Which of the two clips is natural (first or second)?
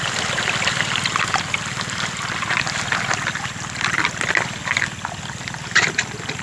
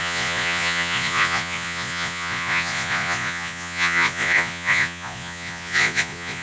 first